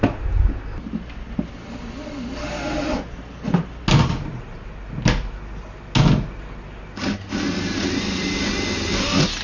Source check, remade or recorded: recorded